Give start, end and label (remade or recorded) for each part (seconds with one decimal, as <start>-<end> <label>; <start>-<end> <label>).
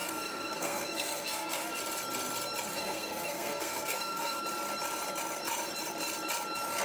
0.0-1.8 remade; 1.8-2.7 recorded; 2.7-4.4 remade; 4.4-6.8 recorded